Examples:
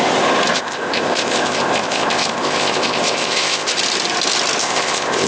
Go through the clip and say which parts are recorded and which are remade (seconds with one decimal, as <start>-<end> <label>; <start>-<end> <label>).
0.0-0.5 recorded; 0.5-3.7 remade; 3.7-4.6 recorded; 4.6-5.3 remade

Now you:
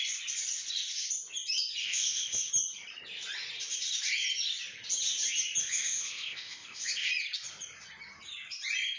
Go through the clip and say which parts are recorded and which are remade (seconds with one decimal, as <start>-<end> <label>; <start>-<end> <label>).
0.0-1.8 recorded; 1.8-2.5 remade; 2.5-5.6 recorded; 5.6-7.1 remade; 7.1-9.0 recorded

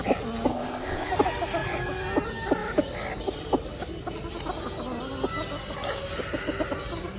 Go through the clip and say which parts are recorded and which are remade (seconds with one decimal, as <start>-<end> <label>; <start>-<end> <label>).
0.0-0.5 recorded; 0.5-1.1 remade; 1.1-7.2 recorded

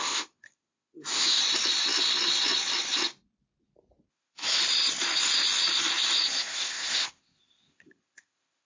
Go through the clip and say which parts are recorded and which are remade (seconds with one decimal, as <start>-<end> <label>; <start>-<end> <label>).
0.0-1.4 remade; 1.4-4.1 recorded; 4.1-4.6 remade; 4.6-6.4 recorded; 6.4-8.7 remade

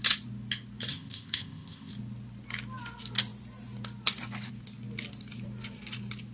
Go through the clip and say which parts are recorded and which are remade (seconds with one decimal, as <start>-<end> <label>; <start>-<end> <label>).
0.0-0.9 recorded; 0.9-1.9 remade; 1.9-6.3 recorded